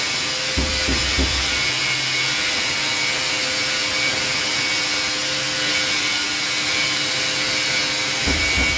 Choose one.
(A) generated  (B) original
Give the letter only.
B